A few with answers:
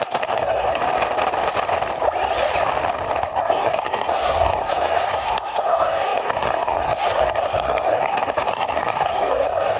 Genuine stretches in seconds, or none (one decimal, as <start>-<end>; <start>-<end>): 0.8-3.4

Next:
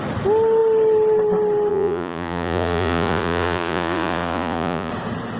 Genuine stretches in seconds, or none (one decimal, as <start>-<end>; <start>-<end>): 0.0-1.7; 4.9-5.4

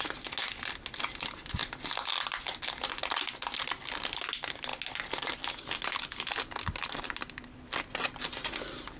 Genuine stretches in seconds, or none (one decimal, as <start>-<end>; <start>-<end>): 0.0-9.0

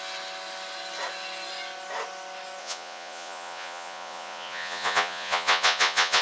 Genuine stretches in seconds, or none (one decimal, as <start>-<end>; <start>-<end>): 0.0-2.6